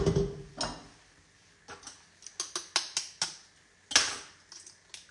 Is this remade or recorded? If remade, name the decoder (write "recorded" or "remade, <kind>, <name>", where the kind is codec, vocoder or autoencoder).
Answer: recorded